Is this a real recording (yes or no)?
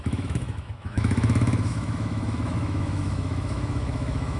no